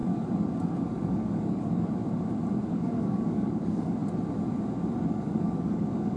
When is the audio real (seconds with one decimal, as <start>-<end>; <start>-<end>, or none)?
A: 2.0-2.7; 4.0-5.1